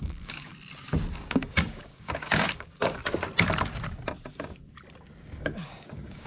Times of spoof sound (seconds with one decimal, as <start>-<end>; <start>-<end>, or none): 0.0-0.5; 1.1-3.0; 5.2-6.3